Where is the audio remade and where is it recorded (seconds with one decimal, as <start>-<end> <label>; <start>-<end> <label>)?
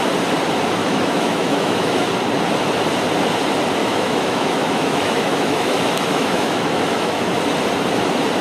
0.0-0.8 recorded; 0.8-2.1 remade; 2.1-3.8 recorded; 3.8-7.4 remade; 7.4-8.4 recorded